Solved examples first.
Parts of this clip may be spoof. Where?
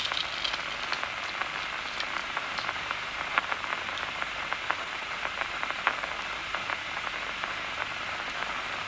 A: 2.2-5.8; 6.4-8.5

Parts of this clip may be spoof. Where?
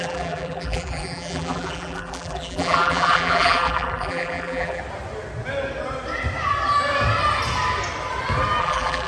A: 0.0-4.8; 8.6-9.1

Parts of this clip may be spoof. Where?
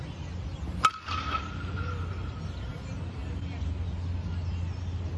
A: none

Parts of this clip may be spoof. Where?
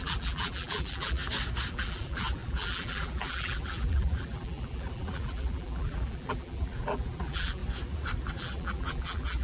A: 0.0-1.2; 1.7-7.6; 8.3-9.4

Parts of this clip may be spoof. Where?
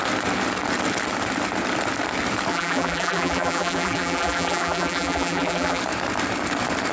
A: 2.5-5.8